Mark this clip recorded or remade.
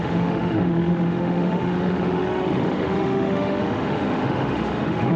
remade